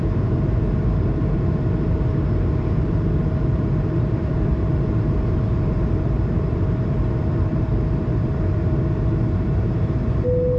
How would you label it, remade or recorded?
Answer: remade